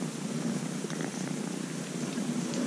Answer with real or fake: fake